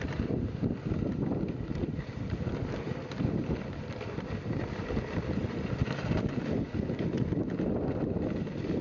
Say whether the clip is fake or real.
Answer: real